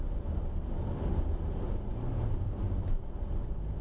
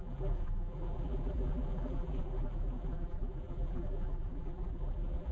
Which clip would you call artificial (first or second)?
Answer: second